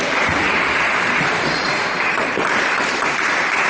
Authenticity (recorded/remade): remade